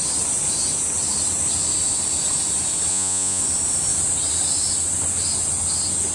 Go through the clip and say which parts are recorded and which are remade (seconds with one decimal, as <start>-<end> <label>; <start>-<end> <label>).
0.0-2.9 recorded; 2.9-3.4 remade; 3.4-6.1 recorded